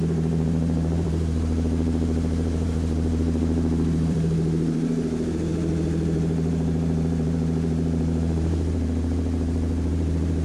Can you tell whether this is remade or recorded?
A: remade